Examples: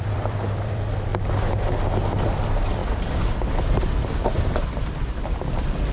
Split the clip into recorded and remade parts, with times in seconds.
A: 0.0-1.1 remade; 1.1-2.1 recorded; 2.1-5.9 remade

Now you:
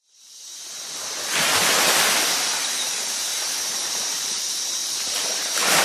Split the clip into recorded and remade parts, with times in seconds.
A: 0.0-1.9 recorded; 1.9-3.3 remade; 3.3-3.9 recorded; 3.9-5.8 remade

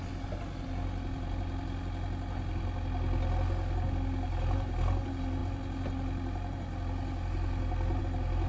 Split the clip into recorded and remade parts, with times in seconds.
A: 0.0-8.5 recorded